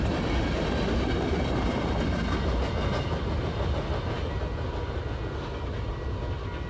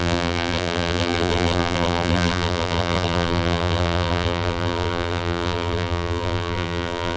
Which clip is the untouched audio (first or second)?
first